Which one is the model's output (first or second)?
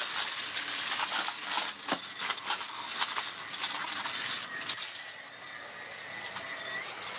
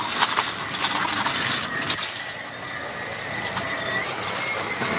second